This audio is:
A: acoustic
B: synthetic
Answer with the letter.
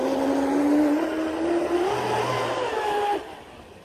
A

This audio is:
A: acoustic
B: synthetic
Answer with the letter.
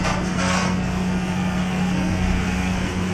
B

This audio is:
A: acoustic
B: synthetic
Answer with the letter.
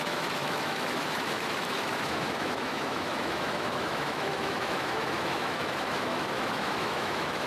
B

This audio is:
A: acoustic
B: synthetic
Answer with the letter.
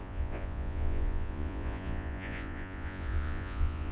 B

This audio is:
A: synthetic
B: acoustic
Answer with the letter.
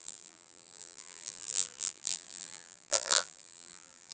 A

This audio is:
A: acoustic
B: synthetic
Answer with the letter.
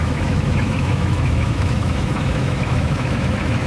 B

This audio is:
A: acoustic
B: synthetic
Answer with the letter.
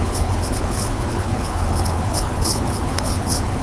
B